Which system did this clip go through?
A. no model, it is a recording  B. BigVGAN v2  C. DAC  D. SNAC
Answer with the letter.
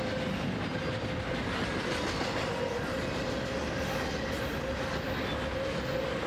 A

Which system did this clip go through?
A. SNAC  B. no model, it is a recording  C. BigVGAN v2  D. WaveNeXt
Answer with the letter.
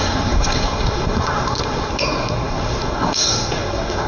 A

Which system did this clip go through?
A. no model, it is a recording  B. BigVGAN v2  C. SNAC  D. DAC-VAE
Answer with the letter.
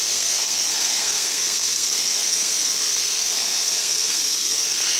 C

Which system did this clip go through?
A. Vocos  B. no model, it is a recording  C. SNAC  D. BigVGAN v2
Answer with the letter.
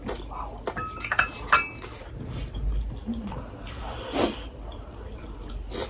B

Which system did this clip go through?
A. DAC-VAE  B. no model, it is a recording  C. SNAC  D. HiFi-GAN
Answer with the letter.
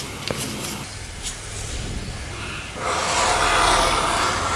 B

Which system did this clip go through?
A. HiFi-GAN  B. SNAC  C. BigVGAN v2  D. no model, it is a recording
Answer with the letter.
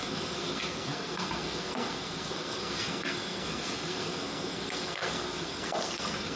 B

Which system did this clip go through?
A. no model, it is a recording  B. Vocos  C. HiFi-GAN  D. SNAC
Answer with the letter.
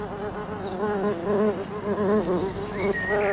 A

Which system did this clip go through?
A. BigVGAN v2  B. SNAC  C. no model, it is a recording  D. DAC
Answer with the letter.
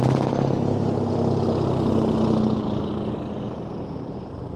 C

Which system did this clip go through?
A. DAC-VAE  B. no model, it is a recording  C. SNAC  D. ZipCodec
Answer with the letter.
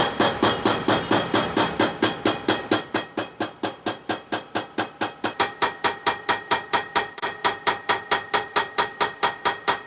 B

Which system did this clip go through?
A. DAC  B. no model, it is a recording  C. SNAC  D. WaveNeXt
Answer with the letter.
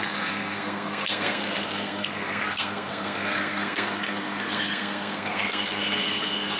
C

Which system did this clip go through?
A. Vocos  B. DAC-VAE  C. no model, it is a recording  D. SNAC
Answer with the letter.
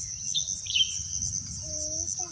C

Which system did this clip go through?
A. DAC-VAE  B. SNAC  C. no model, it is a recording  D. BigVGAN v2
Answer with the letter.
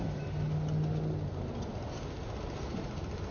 C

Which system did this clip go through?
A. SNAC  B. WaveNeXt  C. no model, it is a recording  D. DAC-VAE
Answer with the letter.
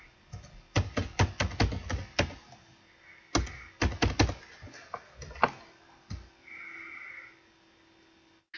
C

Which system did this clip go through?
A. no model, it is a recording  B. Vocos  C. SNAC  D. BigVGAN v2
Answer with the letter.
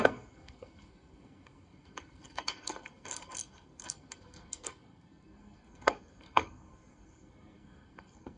C